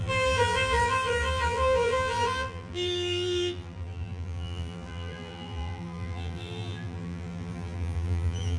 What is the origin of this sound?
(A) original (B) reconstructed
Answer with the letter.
B